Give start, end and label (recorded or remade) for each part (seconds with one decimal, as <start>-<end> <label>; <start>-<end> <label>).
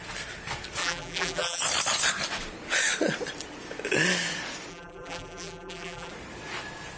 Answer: 0.0-0.8 recorded; 0.8-1.6 remade; 1.6-4.7 recorded; 4.7-6.1 remade; 6.1-7.0 recorded